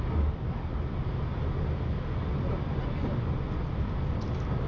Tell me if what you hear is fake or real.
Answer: real